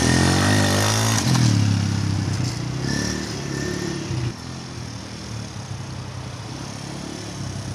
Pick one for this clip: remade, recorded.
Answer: recorded